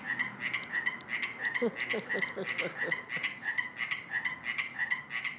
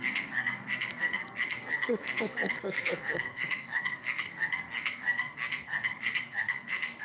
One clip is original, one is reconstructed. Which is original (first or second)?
first